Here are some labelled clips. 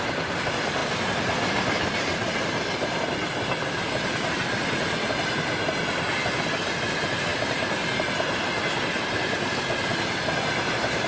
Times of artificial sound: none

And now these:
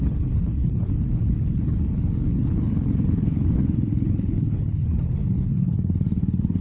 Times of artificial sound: 0.0-6.6 (codec, HILCodec)

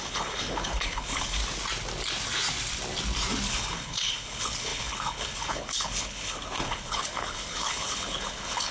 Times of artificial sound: 0.0-1.4 (codec, HILCodec); 3.5-8.7